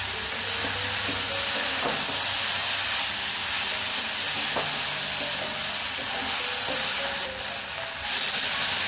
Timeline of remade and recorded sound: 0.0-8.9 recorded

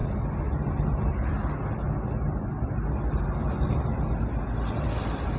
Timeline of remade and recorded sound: 0.0-5.4 recorded

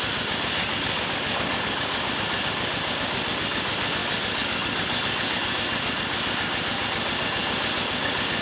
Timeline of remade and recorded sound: 0.0-0.6 recorded; 0.6-2.1 remade; 2.1-4.0 recorded; 4.0-5.4 remade; 5.4-8.4 recorded

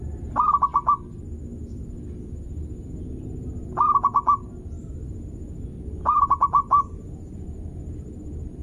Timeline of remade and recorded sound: 0.0-8.6 recorded

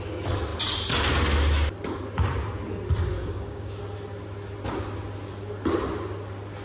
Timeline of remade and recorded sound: 0.0-3.1 recorded; 3.1-3.8 remade; 3.8-6.6 recorded

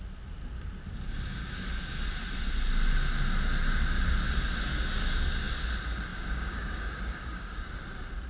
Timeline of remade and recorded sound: 0.0-1.4 recorded; 1.4-2.0 remade; 2.0-4.7 recorded; 4.7-5.5 remade; 5.5-6.1 recorded; 6.1-7.7 remade; 7.7-8.3 recorded

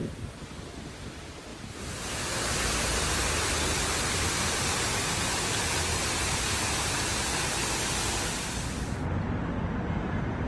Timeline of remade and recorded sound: 0.0-10.5 recorded